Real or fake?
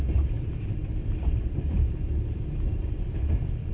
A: real